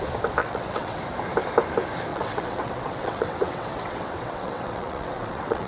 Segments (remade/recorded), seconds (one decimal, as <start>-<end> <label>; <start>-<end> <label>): 0.0-0.4 recorded; 0.4-1.0 remade; 1.0-2.1 recorded; 2.1-5.7 remade